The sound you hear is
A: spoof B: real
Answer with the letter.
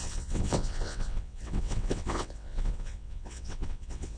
A